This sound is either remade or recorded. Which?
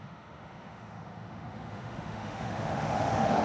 remade